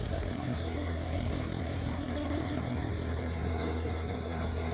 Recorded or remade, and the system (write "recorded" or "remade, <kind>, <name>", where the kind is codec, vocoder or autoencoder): remade, codec, SNAC